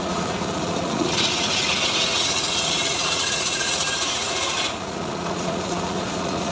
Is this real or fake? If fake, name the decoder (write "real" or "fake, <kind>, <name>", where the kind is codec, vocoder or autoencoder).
fake, vocoder, Vocos